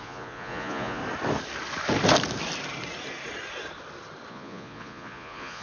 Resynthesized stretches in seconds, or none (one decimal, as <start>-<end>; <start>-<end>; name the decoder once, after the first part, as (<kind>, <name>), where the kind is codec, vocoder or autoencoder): 0.0-1.0 (vocoder, Vocos); 4.3-5.6